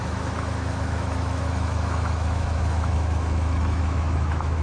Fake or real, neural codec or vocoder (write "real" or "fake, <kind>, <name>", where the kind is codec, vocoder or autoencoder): fake, autoencoder, DAC-VAE